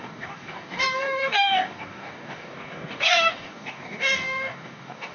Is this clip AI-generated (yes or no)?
yes